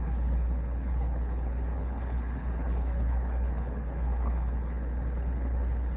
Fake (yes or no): yes